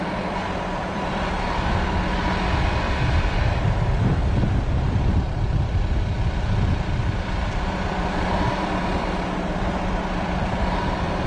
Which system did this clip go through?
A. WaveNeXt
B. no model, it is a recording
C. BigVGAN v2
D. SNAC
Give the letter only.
C